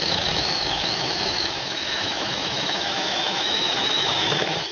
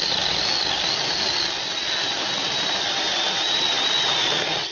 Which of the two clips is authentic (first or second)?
second